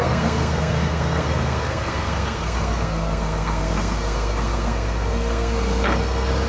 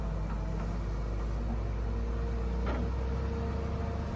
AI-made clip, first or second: first